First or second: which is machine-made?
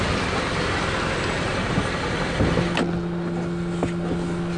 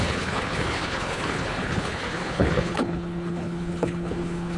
second